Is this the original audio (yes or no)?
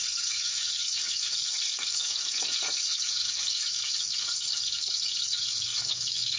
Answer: no